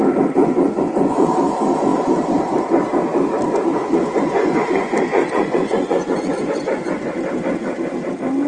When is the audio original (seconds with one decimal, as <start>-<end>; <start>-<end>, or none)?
0.0-0.4; 1.3-3.8; 7.0-8.5